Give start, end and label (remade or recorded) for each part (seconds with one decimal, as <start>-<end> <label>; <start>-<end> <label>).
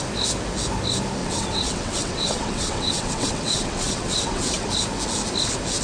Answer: 0.0-1.2 recorded; 1.2-4.7 remade; 4.7-5.8 recorded